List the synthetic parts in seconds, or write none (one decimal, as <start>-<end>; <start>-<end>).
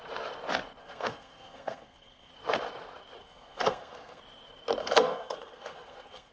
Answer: 0.8-2.3; 3.2-4.2; 4.8-6.3